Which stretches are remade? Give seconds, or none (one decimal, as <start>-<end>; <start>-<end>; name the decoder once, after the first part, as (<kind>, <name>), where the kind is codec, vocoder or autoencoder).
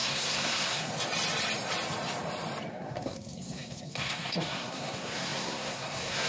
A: 0.0-0.9 (codec, SNAC); 2.7-6.3